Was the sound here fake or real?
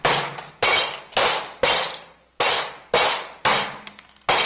real